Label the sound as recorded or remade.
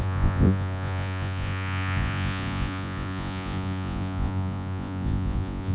remade